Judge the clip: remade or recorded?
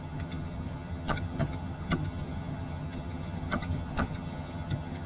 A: remade